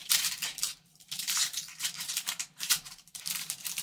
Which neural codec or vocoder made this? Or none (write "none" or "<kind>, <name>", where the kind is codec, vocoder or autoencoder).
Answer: vocoder, BigVGAN v2